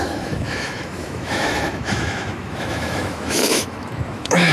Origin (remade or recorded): remade